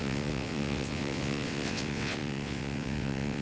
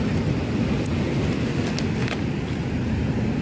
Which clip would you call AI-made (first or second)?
first